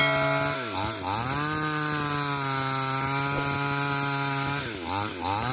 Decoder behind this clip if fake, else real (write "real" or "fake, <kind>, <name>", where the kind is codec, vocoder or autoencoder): real